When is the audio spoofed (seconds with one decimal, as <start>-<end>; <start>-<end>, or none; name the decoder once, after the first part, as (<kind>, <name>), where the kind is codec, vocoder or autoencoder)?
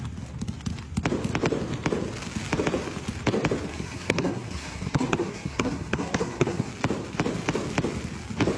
3.7-6.7 (codec, SNAC)